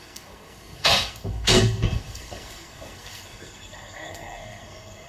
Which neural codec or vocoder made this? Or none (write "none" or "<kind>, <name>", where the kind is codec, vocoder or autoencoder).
codec, SNAC